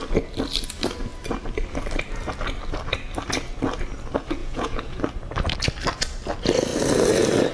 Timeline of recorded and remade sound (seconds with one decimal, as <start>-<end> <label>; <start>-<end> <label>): 0.0-4.4 recorded; 4.4-5.0 remade; 5.0-7.5 recorded